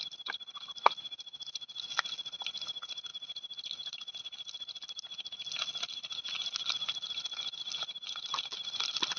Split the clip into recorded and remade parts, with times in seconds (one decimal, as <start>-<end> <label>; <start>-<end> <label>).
0.0-9.2 recorded